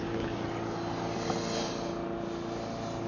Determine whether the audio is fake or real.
real